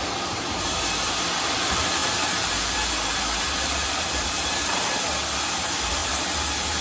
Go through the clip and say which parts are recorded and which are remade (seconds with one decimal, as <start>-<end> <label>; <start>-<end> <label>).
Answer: 0.0-2.0 recorded; 2.0-4.7 remade; 4.7-6.0 recorded; 6.0-6.8 remade